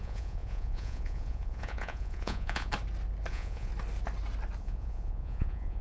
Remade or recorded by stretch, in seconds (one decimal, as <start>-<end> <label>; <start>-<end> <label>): 0.0-2.7 remade; 2.7-3.3 recorded; 3.3-3.7 remade; 3.7-4.6 recorded; 4.6-5.8 remade